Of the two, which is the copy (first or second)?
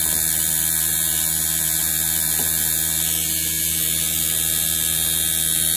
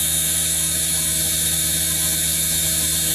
second